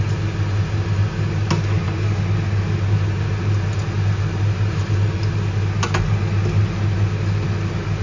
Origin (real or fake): real